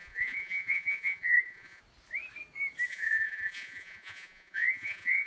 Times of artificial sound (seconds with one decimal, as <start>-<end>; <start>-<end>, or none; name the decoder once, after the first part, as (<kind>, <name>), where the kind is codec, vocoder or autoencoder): 0.0-1.8 (vocoder, Vocos); 2.9-5.3